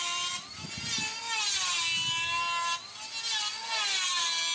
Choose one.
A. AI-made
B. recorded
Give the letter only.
B